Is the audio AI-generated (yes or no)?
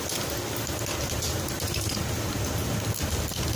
no